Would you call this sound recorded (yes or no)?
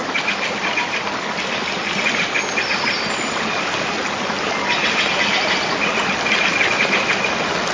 yes